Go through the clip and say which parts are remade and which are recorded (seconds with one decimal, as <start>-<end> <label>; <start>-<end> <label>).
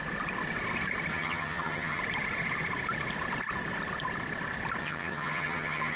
0.0-1.1 recorded; 1.1-2.0 remade; 2.0-4.8 recorded; 4.8-6.0 remade